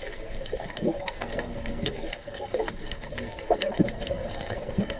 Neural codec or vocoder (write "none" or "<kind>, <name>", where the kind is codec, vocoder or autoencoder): codec, SNAC